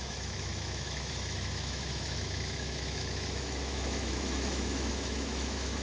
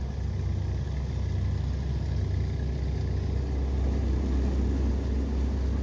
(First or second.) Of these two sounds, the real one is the second